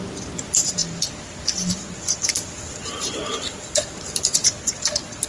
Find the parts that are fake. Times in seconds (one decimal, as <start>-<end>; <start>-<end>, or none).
none